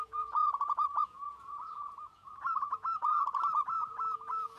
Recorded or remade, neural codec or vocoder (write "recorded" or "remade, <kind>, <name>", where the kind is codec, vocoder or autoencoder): remade, vocoder, Vocos